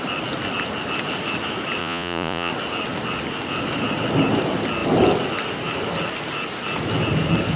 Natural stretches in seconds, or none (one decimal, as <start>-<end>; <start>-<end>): 0.0-1.8; 2.5-7.6